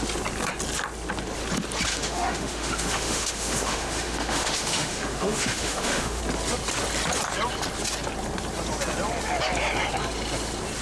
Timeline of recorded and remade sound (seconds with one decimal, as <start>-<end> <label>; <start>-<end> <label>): 0.0-1.9 recorded; 1.9-6.2 remade; 6.2-10.8 recorded